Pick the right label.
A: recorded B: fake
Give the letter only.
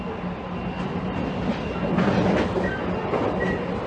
A